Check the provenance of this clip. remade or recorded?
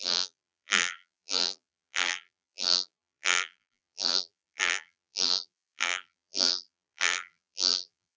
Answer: remade